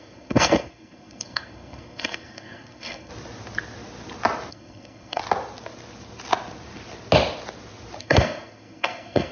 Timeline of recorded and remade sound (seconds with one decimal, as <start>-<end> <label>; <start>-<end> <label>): 0.0-3.1 remade; 3.1-4.5 recorded; 4.5-5.2 remade; 5.2-8.0 recorded; 8.0-9.3 remade